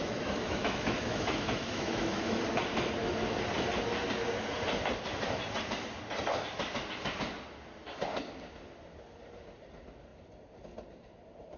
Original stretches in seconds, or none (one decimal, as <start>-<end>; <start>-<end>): 2.4-11.6